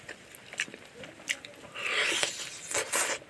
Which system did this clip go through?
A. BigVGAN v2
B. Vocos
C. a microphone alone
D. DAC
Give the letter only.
C